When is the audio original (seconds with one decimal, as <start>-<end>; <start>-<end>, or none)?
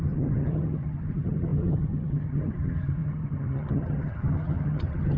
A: none